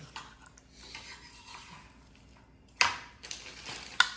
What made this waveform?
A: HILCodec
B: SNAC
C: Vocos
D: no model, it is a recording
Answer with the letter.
D